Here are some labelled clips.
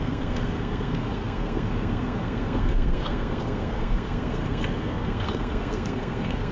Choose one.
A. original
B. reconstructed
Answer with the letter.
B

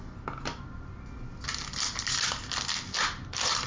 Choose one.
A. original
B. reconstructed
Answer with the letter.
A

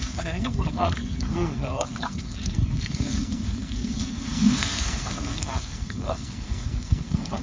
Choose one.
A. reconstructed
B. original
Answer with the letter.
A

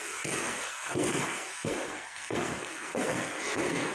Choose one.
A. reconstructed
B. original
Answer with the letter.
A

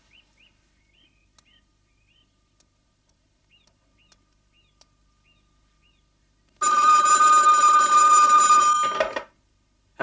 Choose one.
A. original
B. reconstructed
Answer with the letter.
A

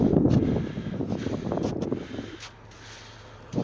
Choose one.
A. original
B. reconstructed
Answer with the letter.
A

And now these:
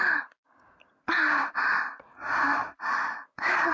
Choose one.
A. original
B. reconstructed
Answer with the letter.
A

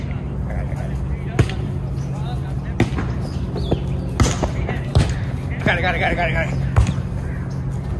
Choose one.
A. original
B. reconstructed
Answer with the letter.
A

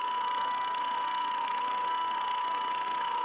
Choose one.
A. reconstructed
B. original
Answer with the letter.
A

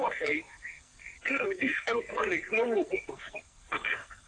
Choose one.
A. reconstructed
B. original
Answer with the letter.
A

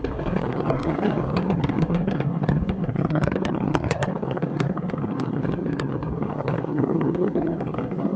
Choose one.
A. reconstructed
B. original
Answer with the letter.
A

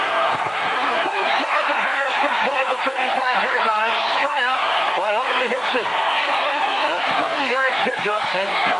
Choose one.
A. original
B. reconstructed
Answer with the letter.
B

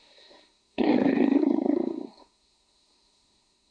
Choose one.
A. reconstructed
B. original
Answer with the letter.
A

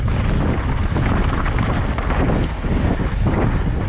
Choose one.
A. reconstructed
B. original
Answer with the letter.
B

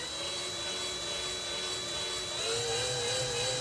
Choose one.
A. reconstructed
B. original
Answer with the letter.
B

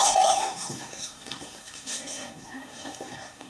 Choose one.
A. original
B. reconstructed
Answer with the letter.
B